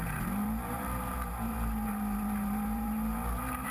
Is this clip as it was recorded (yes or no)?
no